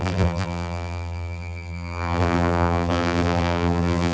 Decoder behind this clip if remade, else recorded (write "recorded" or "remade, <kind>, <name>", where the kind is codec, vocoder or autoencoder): remade, vocoder, BigVGAN v2